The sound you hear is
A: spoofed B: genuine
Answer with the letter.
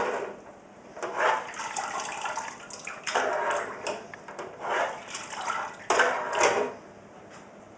B